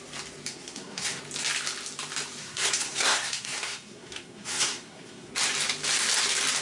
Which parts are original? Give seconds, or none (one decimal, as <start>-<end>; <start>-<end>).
0.0-0.5; 1.2-2.4; 5.3-6.6

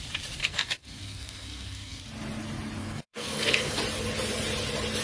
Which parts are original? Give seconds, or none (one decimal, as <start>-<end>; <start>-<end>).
0.0-0.4; 2.0-2.8; 3.8-5.0

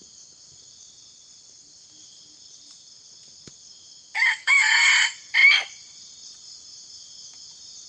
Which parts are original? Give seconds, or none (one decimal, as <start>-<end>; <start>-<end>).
0.0-4.4; 4.9-7.9